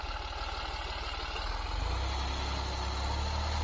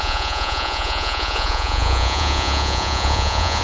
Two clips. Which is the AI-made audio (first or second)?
second